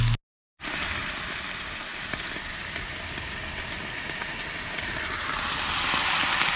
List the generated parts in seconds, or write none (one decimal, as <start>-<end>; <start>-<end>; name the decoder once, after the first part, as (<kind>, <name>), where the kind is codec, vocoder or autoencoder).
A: none